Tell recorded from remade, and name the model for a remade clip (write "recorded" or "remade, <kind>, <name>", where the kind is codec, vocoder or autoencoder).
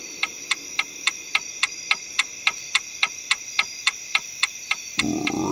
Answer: remade, vocoder, BigVGAN v2